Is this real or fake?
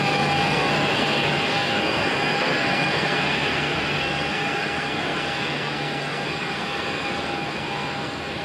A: fake